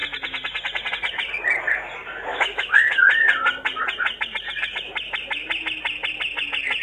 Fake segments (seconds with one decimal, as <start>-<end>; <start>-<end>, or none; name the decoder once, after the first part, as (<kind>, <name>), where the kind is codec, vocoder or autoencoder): 2.3-3.0 (autoencoder, DAC-VAE)